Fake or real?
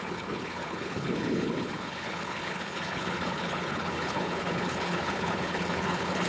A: fake